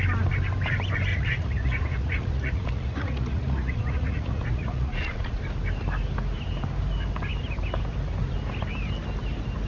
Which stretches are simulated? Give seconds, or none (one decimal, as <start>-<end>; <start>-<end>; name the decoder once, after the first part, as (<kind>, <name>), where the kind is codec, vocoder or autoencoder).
1.1-5.4 (vocoder, Vocos)